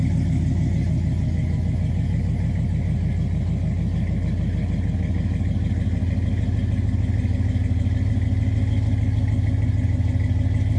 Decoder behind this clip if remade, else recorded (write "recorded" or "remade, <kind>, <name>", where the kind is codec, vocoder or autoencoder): recorded